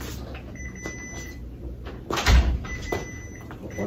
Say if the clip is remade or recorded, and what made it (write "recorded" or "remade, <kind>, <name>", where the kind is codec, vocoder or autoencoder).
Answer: recorded